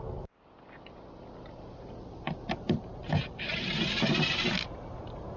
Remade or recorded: recorded